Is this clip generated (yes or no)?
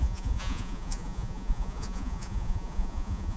yes